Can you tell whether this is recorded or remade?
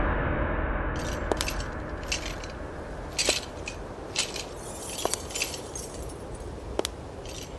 recorded